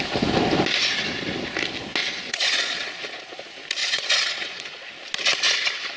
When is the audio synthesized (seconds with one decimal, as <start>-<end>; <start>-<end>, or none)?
2.0-3.3; 3.8-4.9